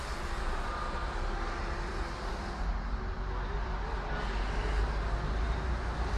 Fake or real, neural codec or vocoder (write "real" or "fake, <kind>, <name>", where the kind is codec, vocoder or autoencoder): real